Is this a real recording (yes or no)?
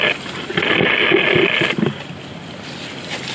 yes